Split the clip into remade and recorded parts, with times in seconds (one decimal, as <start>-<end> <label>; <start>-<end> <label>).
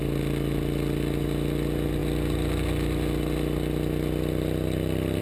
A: 0.0-5.2 recorded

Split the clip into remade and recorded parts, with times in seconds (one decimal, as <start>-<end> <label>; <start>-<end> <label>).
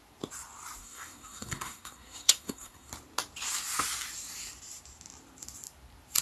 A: 0.0-0.8 recorded; 0.8-2.9 remade; 2.9-6.2 recorded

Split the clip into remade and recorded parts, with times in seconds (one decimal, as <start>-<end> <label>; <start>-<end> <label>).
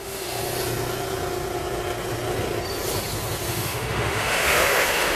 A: 0.0-0.4 remade; 0.4-3.5 recorded; 3.5-5.2 remade